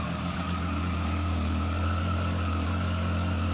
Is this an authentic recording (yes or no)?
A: no